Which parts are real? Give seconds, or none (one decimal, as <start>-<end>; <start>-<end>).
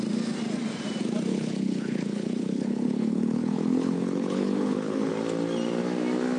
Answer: 0.0-1.3; 5.1-6.4